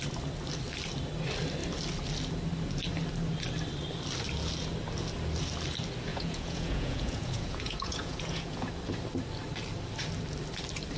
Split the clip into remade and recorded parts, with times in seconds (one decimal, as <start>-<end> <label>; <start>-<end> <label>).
0.0-6.1 recorded; 6.1-8.7 remade; 8.7-11.0 recorded